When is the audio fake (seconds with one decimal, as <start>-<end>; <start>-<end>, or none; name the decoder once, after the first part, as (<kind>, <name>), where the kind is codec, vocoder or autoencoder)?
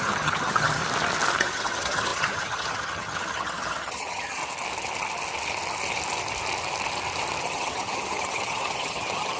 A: 0.0-0.8 (vocoder, HiFi-GAN); 1.4-4.4; 7.4-9.4